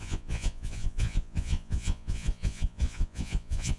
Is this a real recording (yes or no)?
no